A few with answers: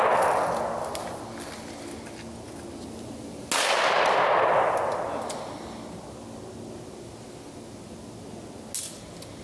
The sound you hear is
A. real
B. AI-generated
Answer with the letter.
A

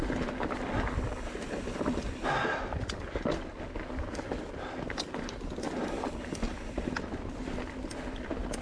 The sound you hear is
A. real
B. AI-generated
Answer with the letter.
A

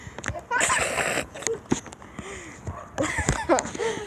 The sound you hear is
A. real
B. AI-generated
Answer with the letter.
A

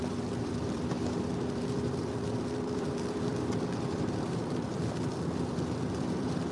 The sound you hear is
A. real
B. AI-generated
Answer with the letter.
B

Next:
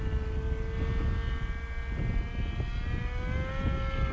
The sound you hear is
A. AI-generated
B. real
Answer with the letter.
B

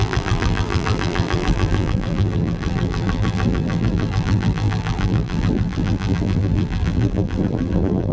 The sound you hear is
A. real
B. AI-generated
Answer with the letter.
B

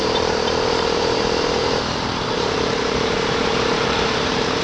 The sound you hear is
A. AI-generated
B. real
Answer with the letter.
A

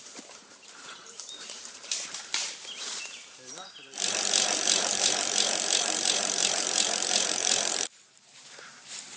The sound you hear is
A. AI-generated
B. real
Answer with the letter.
A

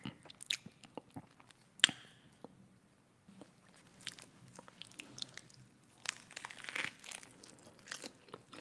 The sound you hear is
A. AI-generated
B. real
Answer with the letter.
B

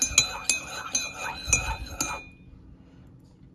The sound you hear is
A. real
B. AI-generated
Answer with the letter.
A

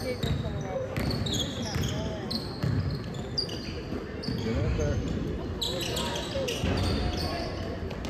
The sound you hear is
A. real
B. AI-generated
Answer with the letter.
A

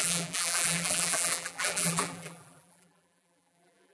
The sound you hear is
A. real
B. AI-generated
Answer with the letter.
B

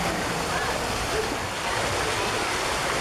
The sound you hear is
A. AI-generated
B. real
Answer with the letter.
B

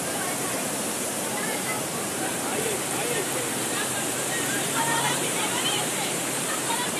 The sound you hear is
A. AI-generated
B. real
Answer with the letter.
A